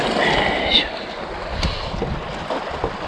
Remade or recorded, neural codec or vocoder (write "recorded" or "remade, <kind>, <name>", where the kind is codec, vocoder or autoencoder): recorded